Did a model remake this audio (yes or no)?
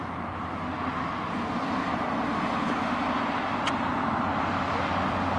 no